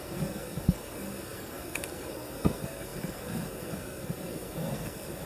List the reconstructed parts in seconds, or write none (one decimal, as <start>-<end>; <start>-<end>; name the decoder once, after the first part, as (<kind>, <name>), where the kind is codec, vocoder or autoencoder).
0.0-5.3 (codec, SNAC)